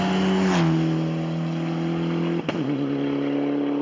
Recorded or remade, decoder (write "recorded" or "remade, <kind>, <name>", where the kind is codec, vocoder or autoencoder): recorded